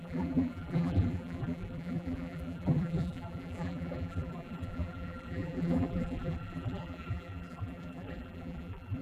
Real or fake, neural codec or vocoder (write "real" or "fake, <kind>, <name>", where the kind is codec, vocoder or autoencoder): fake, vocoder, BigVGAN v2